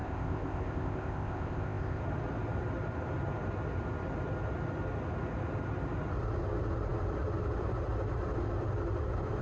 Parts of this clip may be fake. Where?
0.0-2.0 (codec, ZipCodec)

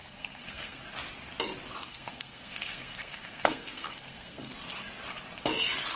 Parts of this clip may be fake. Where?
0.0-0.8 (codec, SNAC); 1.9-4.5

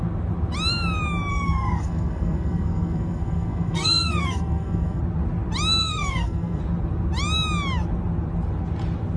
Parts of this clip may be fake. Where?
1.3-5.0 (codec, SNAC); 5.8-6.6